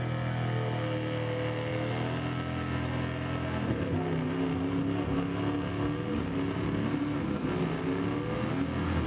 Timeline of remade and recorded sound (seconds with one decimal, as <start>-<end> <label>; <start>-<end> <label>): 0.0-9.1 recorded